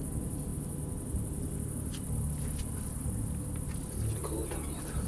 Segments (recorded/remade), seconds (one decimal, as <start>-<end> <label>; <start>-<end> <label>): 0.0-5.1 recorded